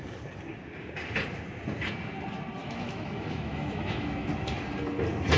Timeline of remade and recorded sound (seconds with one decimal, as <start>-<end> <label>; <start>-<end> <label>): 0.0-2.6 recorded; 2.6-4.3 remade; 4.3-5.4 recorded